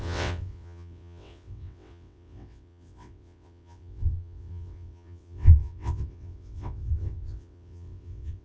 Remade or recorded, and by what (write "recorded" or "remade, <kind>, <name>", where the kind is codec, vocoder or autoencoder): remade, vocoder, WaveNeXt